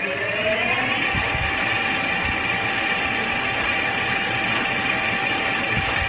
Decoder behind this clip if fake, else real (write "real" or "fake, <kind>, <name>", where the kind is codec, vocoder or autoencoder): real